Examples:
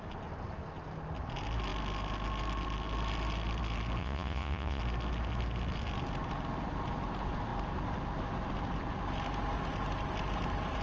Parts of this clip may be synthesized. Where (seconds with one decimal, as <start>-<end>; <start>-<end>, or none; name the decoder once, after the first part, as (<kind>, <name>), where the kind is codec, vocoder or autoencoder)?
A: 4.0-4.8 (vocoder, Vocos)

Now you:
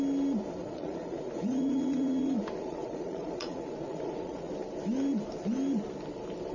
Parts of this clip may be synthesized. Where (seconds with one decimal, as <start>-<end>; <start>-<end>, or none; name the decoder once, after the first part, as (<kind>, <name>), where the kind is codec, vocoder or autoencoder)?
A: 0.6-4.5 (vocoder, Vocos)

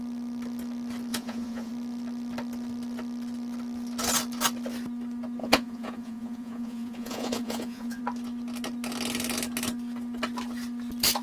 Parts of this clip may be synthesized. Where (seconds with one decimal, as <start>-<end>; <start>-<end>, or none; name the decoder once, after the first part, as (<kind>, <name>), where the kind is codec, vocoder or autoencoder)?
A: 1.1-1.7 (vocoder, Vocos); 5.4-8.0

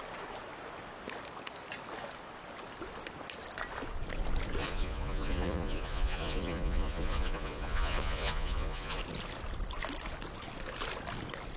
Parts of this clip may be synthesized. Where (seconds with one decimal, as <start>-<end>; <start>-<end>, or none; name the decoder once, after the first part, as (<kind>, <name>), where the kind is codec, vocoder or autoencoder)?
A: 4.6-9.0 (vocoder, Vocos)

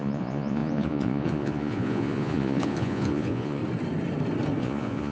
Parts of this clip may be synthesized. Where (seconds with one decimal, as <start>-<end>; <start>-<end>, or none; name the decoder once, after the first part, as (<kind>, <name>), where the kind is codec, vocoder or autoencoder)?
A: 0.0-3.6 (vocoder, Vocos); 4.6-5.1